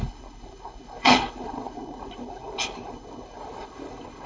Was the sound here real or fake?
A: fake